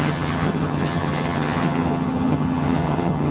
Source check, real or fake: fake